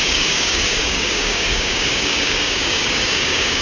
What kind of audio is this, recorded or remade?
remade